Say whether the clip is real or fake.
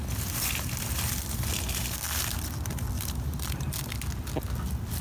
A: real